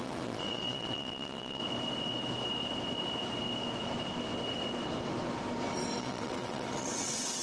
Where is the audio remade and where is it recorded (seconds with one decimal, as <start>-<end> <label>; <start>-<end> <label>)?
0.0-1.6 remade; 1.6-6.0 recorded; 6.0-7.4 remade